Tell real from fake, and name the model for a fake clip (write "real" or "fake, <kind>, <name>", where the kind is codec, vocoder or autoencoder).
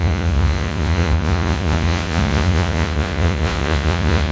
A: fake, vocoder, Vocos